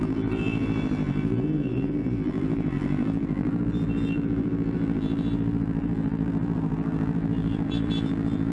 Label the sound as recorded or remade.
remade